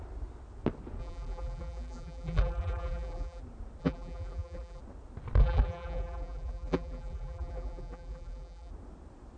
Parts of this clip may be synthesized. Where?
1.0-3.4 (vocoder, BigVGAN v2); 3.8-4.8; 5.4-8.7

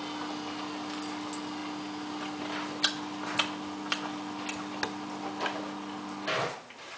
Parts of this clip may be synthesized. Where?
none

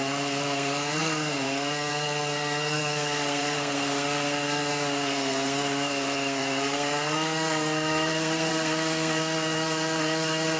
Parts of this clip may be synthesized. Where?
0.0-10.6 (codec, SNAC)

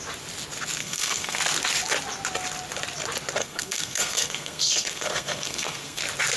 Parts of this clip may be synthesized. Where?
0.8-1.4 (codec, SNAC); 3.4-6.0